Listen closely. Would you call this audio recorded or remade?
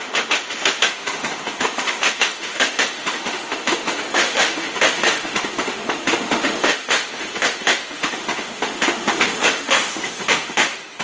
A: remade